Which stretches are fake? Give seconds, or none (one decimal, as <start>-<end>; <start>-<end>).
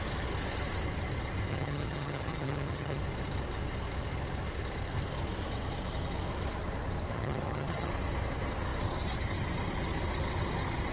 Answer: 1.5-3.0; 7.1-7.9